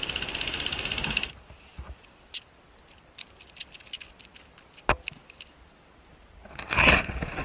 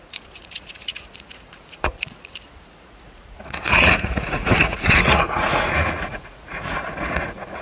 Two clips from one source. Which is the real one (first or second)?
first